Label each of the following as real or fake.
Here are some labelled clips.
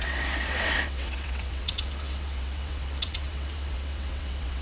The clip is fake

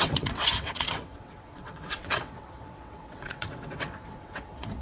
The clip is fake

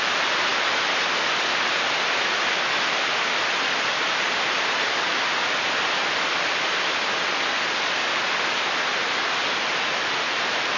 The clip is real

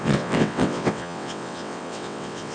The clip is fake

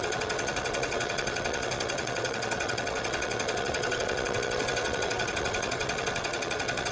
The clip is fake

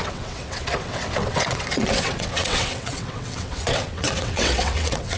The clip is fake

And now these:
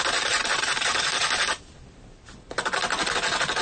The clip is real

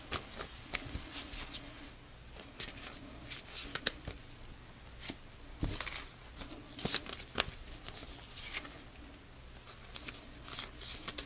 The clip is real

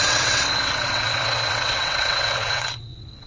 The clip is fake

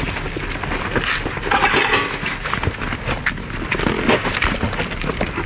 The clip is real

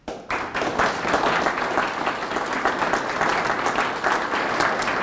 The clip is real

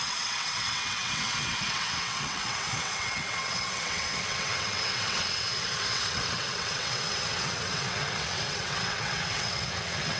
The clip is fake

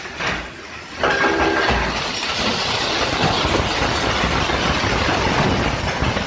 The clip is real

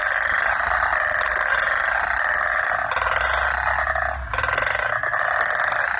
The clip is real